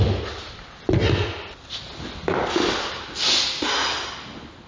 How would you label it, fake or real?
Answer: real